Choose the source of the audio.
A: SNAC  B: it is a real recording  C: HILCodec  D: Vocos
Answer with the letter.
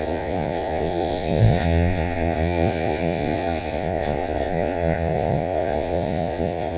D